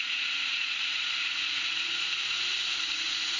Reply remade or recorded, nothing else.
remade